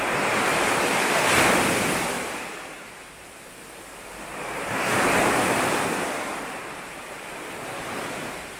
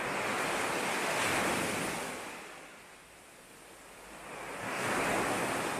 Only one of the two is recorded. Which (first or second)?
second